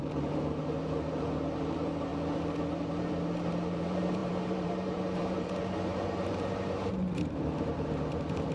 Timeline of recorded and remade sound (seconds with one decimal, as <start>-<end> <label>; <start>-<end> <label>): 0.0-2.1 remade; 2.1-2.8 recorded; 2.8-8.5 remade

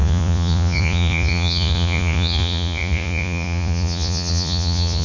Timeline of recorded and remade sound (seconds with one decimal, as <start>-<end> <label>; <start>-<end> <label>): 0.0-5.0 remade

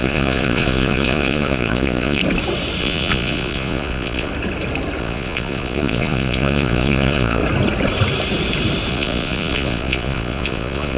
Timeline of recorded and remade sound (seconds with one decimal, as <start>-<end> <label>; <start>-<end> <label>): 0.0-2.2 remade; 2.2-2.8 recorded; 2.8-4.3 remade; 4.3-5.0 recorded; 5.0-7.4 remade; 7.4-8.9 recorded; 8.9-11.0 remade

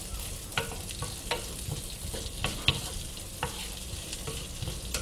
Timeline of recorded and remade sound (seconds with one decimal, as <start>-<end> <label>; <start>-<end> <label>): 0.0-5.0 recorded